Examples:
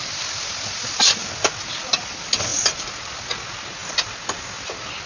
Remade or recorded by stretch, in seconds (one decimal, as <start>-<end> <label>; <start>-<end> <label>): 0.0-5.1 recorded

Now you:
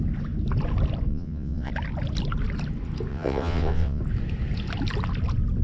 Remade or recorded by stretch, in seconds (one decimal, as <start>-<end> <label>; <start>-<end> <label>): 0.0-1.1 recorded; 1.1-1.7 remade; 1.7-3.1 recorded; 3.1-4.0 remade; 4.0-5.6 recorded

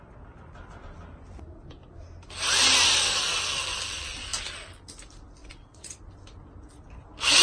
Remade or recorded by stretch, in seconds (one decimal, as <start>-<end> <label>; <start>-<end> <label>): 0.0-5.4 recorded; 5.4-6.0 remade; 6.0-7.4 recorded

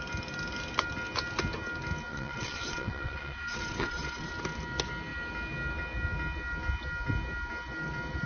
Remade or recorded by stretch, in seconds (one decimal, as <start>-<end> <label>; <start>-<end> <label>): 0.0-2.1 recorded; 2.1-4.3 remade; 4.3-8.3 recorded

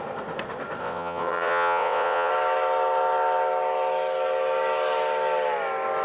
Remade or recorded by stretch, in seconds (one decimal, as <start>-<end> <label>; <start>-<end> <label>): 0.0-0.8 recorded; 0.8-2.3 remade; 2.3-6.0 recorded

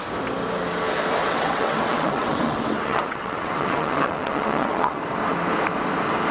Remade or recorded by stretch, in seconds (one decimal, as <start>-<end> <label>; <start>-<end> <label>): 0.0-1.2 recorded; 1.2-5.0 remade; 5.0-6.3 recorded